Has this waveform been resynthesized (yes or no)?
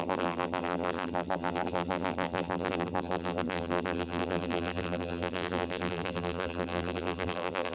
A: yes